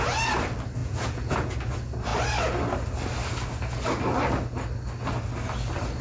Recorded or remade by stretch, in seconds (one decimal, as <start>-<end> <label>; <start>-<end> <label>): 0.0-0.8 recorded; 0.8-1.5 remade; 1.5-6.0 recorded